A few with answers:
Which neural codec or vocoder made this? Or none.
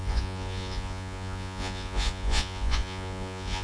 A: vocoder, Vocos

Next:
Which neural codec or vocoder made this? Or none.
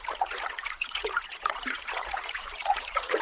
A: vocoder, Vocos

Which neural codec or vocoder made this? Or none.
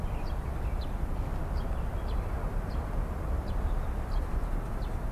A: none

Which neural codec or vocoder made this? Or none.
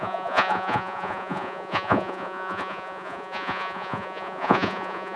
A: vocoder, Vocos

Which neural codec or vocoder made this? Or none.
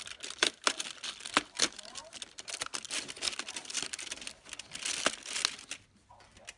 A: none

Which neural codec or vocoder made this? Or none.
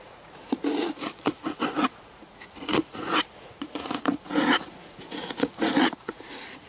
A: vocoder, Vocos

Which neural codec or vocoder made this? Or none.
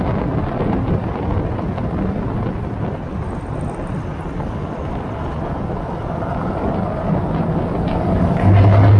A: none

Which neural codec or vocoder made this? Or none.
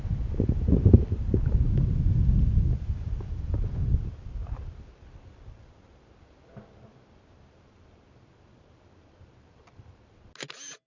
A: none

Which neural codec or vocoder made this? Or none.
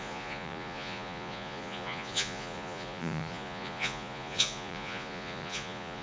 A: vocoder, Vocos